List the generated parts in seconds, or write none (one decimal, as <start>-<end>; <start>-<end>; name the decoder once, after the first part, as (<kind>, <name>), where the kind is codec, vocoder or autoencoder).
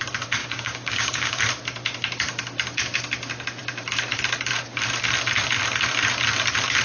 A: 0.4-1.4 (codec, DAC)